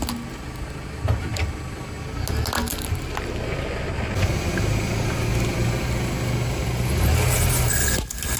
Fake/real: real